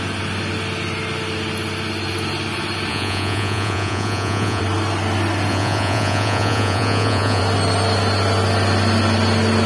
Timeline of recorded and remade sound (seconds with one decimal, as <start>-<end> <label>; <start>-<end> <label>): 0.0-2.9 recorded; 2.9-4.6 remade; 4.6-5.5 recorded; 5.5-7.4 remade; 7.4-9.7 recorded